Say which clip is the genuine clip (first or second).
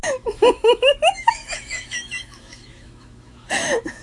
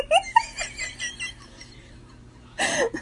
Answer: second